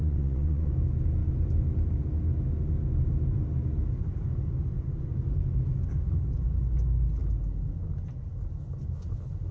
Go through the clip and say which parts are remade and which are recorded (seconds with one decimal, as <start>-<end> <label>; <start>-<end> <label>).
0.0-0.7 remade; 0.7-9.5 recorded